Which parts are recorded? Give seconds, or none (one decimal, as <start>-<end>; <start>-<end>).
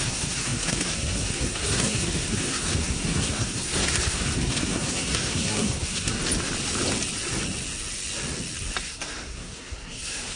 6.2-8.8